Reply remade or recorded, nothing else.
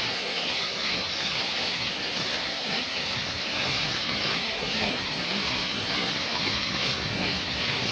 remade